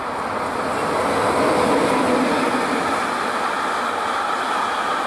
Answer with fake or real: real